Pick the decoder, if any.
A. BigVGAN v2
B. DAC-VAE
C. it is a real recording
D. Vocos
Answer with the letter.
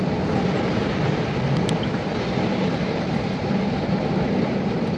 A